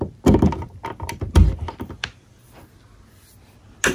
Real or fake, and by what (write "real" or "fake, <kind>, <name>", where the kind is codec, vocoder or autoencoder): real